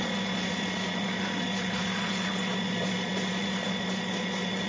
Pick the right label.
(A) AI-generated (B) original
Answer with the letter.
A